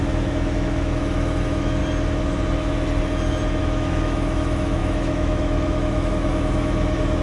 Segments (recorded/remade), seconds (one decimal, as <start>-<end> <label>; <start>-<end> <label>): 0.0-1.8 remade; 1.8-3.6 recorded; 3.6-7.2 remade